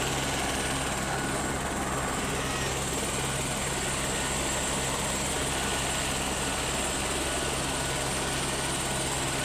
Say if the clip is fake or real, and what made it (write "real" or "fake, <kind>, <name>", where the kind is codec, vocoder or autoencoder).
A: real